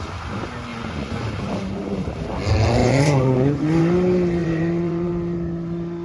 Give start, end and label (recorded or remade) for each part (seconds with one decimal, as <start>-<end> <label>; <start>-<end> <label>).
0.0-0.7 recorded; 0.7-1.3 remade; 1.3-2.8 recorded; 2.8-3.8 remade; 3.8-4.4 recorded; 4.4-5.1 remade; 5.1-6.0 recorded